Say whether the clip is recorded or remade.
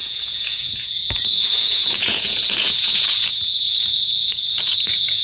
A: remade